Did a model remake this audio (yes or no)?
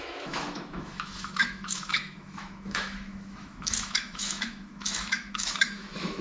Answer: yes